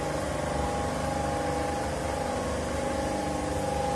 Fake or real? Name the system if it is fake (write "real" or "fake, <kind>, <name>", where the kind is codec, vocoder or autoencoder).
real